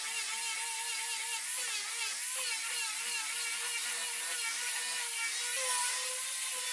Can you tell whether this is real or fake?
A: real